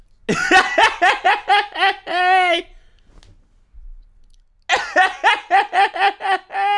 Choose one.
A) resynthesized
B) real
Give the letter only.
B